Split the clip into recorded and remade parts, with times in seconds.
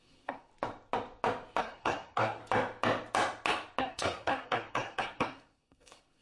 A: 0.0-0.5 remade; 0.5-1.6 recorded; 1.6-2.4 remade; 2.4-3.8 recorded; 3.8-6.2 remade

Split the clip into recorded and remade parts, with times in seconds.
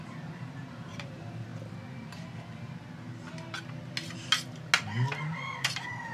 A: 0.0-1.5 remade; 1.5-5.2 recorded; 5.2-6.1 remade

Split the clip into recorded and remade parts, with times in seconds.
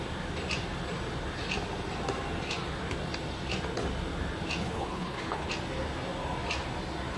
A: 0.0-4.6 recorded; 4.6-5.5 remade; 5.5-7.2 recorded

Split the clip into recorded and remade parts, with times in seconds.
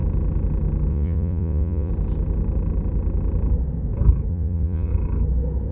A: 0.0-0.9 recorded; 0.9-1.9 remade; 1.9-4.3 recorded; 4.3-4.9 remade; 4.9-5.7 recorded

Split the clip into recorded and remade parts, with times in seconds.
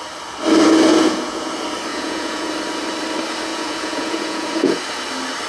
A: 0.0-0.9 recorded; 0.9-1.5 remade; 1.5-1.9 recorded; 1.9-2.5 remade; 2.5-3.5 recorded; 3.5-4.8 remade; 4.8-5.5 recorded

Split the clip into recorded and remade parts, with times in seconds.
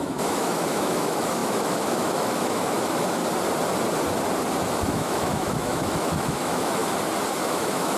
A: 0.0-3.2 remade; 3.2-4.8 recorded; 4.8-6.8 remade; 6.8-7.4 recorded; 7.4-8.0 remade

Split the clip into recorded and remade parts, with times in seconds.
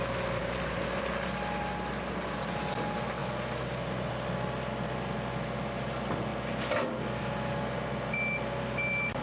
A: 0.0-0.4 recorded; 0.4-1.0 remade; 1.0-9.2 recorded